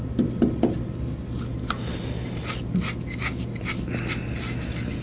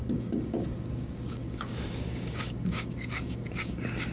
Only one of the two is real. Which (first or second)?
first